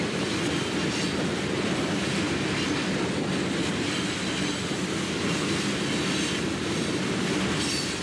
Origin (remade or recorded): recorded